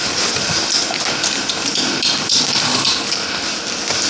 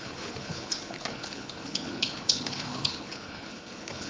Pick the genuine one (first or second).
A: first